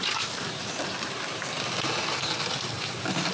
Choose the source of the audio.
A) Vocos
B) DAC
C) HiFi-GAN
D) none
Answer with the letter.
D